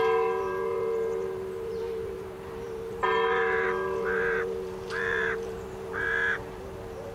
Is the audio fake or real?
fake